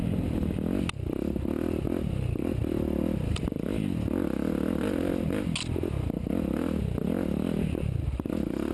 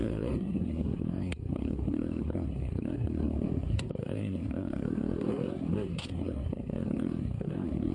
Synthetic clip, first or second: second